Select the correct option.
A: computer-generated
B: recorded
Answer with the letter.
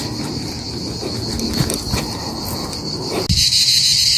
B